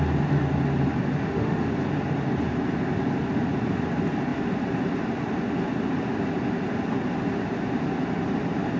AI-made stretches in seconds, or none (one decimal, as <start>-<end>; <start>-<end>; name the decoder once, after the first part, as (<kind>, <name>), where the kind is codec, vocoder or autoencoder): 1.2-1.7 (autoencoder, DAC-VAE)